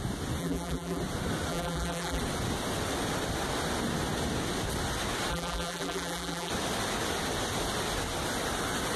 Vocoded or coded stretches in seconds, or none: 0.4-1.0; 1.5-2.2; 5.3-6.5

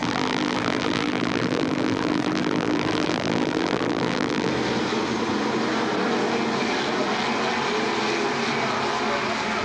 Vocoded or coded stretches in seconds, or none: 0.0-4.5

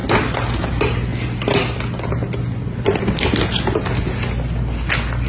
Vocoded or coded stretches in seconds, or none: none

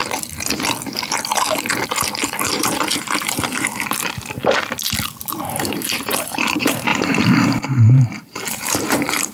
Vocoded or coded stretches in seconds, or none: 2.6-4.4; 5.3-9.3